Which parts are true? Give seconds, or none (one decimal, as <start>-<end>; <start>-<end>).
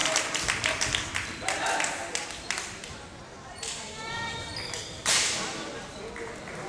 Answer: 0.0-6.7